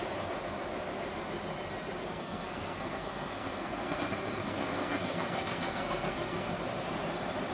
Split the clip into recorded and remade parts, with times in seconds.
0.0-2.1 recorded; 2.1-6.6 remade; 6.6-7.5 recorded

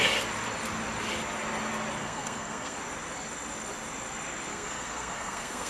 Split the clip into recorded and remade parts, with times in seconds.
0.0-2.0 recorded; 2.0-2.8 remade; 2.8-4.5 recorded; 4.5-5.7 remade

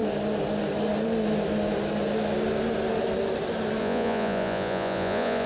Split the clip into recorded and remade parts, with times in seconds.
0.0-3.8 recorded; 3.8-5.5 remade

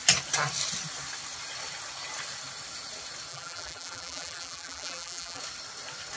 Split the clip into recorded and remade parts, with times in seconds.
0.0-3.3 recorded; 3.3-5.4 remade; 5.4-6.2 recorded

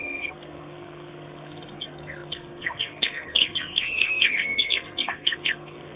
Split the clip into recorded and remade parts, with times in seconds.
0.0-6.0 remade